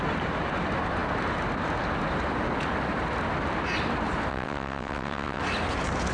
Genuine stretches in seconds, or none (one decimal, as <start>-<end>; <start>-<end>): 0.0-4.3; 5.4-6.1